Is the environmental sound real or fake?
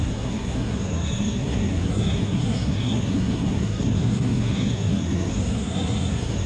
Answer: fake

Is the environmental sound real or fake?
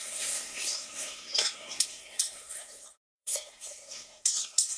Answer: fake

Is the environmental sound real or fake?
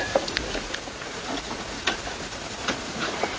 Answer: fake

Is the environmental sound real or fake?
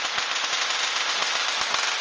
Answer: real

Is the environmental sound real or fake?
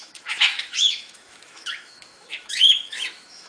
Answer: fake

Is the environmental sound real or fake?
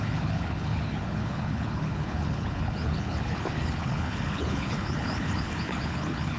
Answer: fake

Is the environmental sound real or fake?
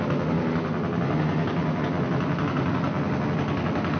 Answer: real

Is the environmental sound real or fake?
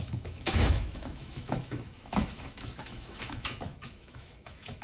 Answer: fake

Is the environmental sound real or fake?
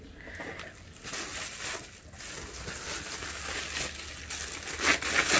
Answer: real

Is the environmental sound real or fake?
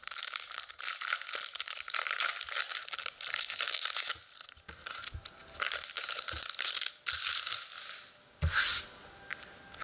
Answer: real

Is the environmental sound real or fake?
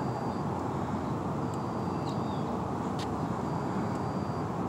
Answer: real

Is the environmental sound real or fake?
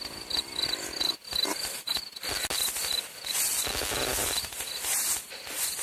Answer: real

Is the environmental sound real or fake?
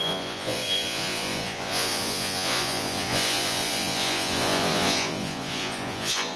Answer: fake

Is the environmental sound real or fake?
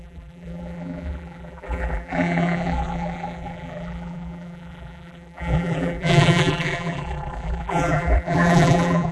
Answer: fake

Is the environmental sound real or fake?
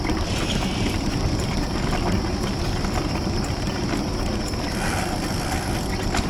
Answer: real